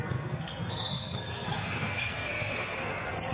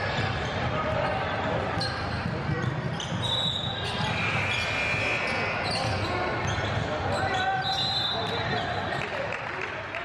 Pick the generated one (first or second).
first